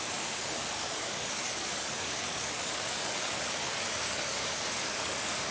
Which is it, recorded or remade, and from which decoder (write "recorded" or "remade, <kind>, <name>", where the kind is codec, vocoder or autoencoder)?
remade, codec, DAC